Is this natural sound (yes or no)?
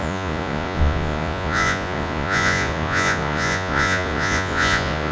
no